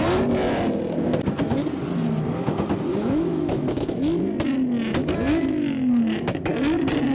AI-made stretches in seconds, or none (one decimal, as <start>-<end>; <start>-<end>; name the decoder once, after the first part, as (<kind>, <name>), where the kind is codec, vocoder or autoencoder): 2.9-4.2 (autoencoder, DAC-VAE); 5.0-6.5